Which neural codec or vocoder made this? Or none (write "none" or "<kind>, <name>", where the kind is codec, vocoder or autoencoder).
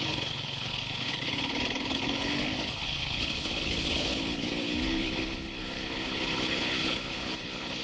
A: codec, HILCodec